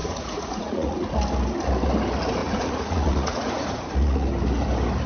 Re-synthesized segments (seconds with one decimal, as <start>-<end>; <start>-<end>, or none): 0.0-1.1; 2.4-4.3